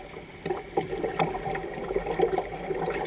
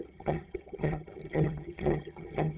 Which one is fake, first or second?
second